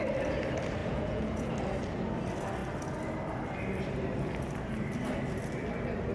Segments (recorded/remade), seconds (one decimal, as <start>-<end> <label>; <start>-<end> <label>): 0.0-0.8 recorded; 0.8-1.5 remade; 1.5-6.1 recorded